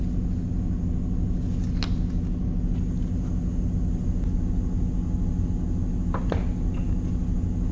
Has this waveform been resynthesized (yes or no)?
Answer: no